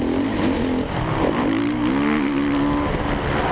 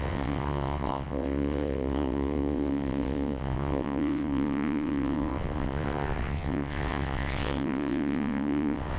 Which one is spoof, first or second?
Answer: second